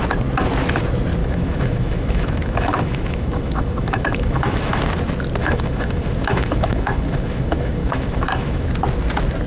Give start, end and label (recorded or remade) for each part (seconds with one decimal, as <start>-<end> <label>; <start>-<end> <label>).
0.0-1.2 recorded; 1.2-4.8 remade; 4.8-5.4 recorded; 5.4-8.7 remade; 8.7-9.5 recorded